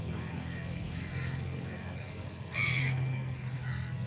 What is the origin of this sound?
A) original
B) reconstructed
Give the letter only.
B